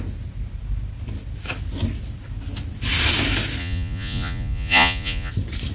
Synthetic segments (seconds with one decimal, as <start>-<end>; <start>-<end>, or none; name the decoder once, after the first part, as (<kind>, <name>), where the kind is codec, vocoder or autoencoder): 3.6-5.3 (vocoder, Vocos)